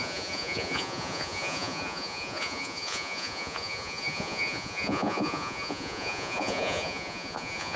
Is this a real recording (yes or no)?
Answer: no